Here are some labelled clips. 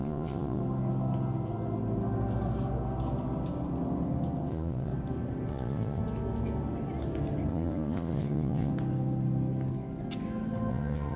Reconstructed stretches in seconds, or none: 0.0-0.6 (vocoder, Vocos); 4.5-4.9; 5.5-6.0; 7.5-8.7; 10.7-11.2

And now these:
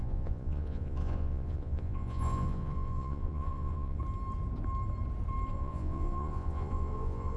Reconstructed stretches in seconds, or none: 0.0-4.0 (vocoder, Vocos); 5.5-7.4